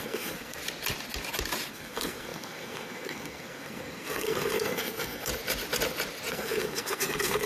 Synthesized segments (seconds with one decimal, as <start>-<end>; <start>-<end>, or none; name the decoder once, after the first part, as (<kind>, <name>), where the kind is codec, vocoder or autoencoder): 0.0-0.6 (codec, SNAC); 1.7-5.3; 6.3-7.5